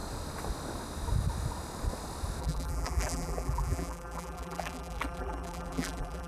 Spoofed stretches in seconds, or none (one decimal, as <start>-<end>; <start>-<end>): 2.4-6.3